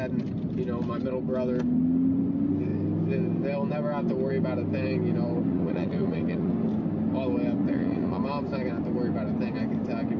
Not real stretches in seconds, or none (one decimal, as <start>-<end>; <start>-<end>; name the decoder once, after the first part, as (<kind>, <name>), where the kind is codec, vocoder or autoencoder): 5.5-6.5 (vocoder, Vocos); 7.6-8.2